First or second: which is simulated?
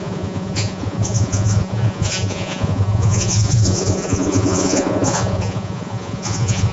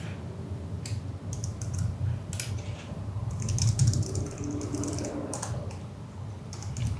first